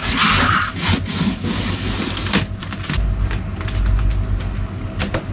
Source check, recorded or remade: recorded